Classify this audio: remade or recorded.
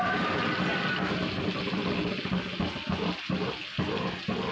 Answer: recorded